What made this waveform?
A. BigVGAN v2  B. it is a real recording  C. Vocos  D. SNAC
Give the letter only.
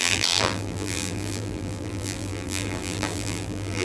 A